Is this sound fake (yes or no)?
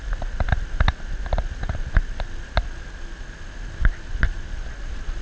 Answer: no